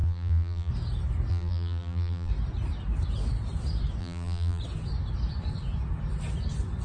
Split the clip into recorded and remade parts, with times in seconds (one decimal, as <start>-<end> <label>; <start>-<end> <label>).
0.0-0.7 remade; 0.7-1.3 recorded; 1.3-2.3 remade; 2.3-4.0 recorded; 4.0-4.6 remade; 4.6-6.8 recorded